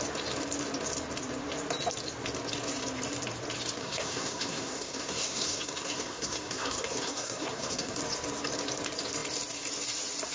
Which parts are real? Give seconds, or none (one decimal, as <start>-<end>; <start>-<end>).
0.0-3.8; 8.0-10.3